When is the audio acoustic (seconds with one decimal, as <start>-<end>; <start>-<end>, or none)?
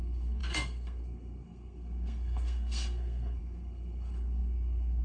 none